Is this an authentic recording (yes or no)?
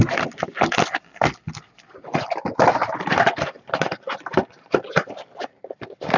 yes